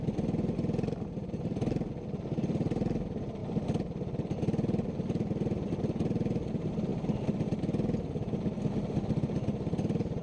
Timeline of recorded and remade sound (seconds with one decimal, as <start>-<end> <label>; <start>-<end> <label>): 0.0-10.2 recorded